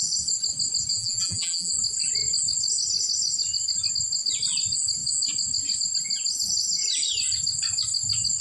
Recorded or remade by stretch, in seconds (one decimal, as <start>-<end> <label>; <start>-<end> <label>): 0.0-0.9 recorded; 0.9-1.7 remade; 1.7-8.4 recorded